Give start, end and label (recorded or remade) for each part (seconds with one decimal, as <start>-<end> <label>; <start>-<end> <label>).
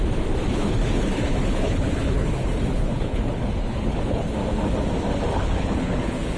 0.0-0.5 recorded; 0.5-4.3 remade; 4.3-5.3 recorded; 5.3-6.4 remade